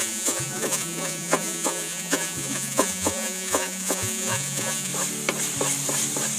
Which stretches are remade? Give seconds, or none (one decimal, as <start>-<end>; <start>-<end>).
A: 0.0-4.9

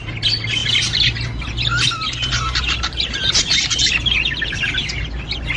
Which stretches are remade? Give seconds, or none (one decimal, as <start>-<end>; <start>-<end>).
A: none

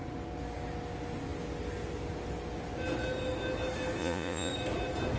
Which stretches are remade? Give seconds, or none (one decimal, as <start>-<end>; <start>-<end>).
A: 4.0-4.5

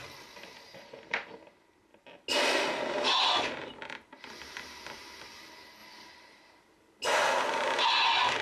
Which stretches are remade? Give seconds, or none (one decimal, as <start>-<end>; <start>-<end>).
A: none

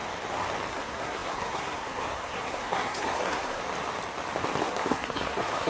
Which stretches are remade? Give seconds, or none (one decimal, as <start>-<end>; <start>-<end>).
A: 0.7-3.6; 4.6-5.7

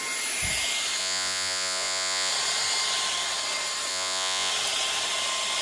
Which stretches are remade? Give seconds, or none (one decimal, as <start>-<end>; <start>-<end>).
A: 1.0-2.3; 3.9-4.5

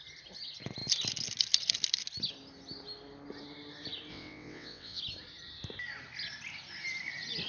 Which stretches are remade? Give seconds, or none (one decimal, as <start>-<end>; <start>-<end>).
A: 4.1-5.0